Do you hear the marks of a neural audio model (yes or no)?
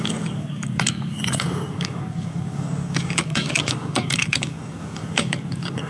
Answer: yes